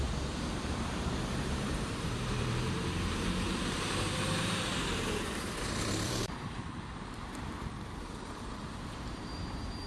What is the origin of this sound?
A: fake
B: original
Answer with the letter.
A